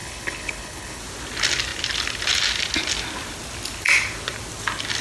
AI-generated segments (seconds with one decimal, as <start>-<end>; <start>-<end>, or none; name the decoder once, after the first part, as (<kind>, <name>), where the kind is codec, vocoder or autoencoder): 0.0-1.0 (codec, HILCodec)